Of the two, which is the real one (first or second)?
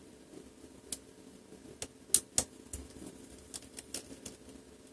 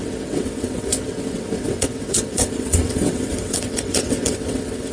first